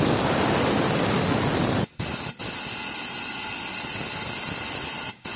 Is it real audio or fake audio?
real